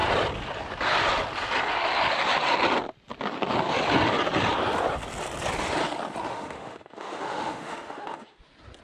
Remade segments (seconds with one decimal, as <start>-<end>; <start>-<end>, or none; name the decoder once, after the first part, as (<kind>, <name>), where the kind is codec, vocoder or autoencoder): 6.3-8.4 (autoencoder, DAC-VAE)